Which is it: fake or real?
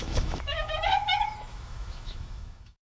fake